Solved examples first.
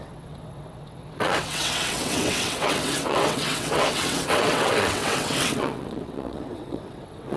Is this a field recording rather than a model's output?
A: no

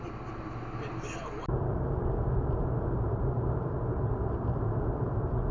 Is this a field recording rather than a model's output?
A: yes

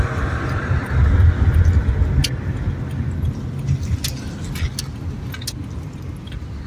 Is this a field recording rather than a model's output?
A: yes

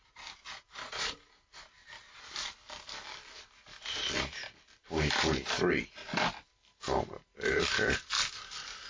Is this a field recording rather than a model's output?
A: yes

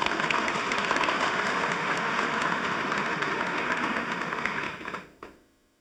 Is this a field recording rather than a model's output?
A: no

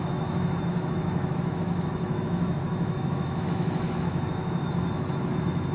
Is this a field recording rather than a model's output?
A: no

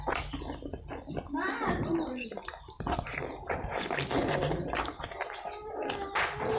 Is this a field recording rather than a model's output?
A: yes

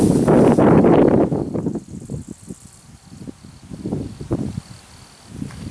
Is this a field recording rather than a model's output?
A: yes